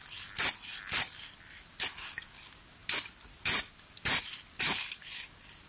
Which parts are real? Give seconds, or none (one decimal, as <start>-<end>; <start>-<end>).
0.0-5.7

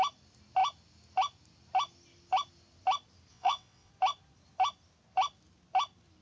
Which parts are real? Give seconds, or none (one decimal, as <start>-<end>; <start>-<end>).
0.0-3.3; 3.9-6.2

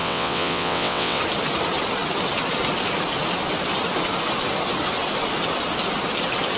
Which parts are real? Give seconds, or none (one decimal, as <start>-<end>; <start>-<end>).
1.2-6.6

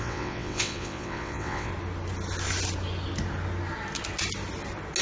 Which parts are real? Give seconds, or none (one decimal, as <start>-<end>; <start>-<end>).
1.7-5.0